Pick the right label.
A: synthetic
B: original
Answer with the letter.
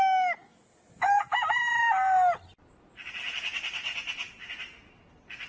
B